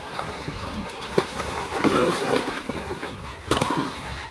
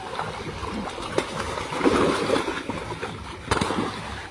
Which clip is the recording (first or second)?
second